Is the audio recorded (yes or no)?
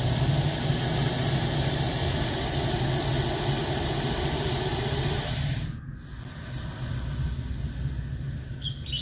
yes